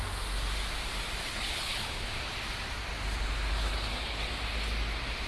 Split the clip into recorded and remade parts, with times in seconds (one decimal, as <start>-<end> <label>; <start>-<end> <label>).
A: 0.0-1.2 recorded; 1.2-2.1 remade; 2.1-3.6 recorded; 3.6-4.3 remade; 4.3-5.3 recorded